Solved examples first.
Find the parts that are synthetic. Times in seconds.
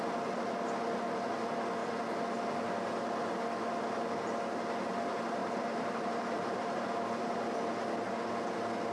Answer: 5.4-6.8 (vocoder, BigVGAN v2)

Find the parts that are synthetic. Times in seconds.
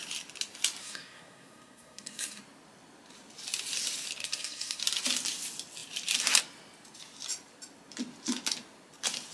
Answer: 0.8-2.4 (codec, SNAC); 4.2-4.8